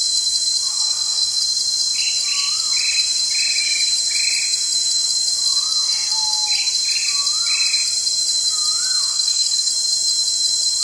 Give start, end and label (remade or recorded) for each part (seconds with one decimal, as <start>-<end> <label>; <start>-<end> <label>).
0.0-0.7 recorded; 0.7-1.4 remade; 1.4-9.1 recorded; 9.1-9.7 remade; 9.7-10.8 recorded